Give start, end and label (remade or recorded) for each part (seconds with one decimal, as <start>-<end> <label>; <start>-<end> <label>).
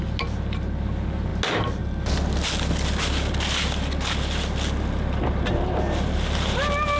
0.0-7.0 recorded